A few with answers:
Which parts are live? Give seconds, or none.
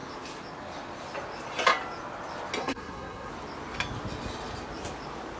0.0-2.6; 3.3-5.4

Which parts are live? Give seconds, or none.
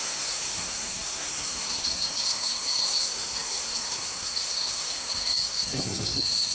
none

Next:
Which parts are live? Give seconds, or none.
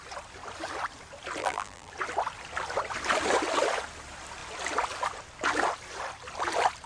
0.0-1.4; 1.9-6.9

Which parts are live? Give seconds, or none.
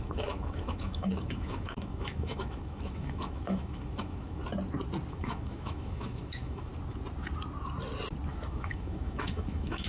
4.4-5.1; 6.7-8.3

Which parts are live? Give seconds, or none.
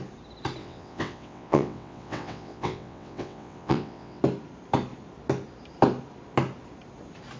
0.0-0.6; 4.2-7.4